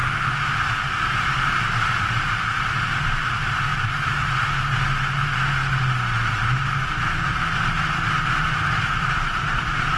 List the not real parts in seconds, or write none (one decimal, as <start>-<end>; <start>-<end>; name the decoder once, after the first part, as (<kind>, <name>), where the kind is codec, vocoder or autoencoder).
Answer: 1.4-5.6 (vocoder, BigVGAN v2); 8.3-10.0